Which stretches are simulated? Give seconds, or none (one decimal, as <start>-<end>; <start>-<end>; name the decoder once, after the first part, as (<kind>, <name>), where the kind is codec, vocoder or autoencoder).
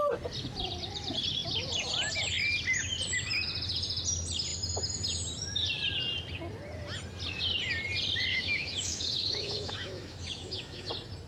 8.3-10.9 (autoencoder, DAC-VAE)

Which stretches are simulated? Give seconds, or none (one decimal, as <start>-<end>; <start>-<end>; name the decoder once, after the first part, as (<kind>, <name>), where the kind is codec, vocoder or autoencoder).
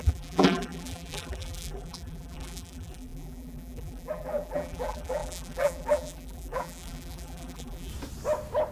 0.0-7.9 (vocoder, BigVGAN v2)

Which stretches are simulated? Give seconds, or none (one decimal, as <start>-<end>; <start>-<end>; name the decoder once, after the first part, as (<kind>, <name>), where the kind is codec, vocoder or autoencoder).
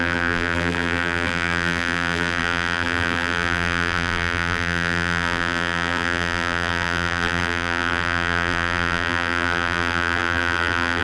0.0-11.0 (vocoder, BigVGAN v2)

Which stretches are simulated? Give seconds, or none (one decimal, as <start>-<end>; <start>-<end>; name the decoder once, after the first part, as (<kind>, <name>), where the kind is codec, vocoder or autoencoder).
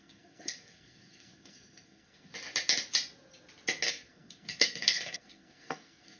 0.0-2.3 (codec, SNAC); 3.9-6.2